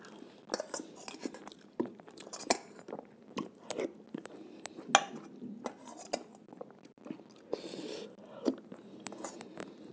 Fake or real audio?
real